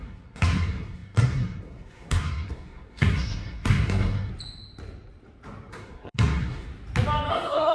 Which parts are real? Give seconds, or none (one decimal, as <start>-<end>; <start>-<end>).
4.3-5.7; 6.7-7.3